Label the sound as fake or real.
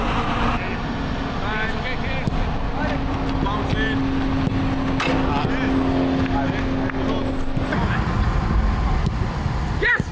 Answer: real